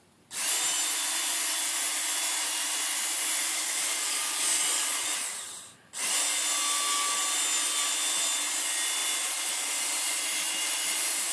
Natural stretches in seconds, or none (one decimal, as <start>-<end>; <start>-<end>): 0.0-3.4; 4.6-11.3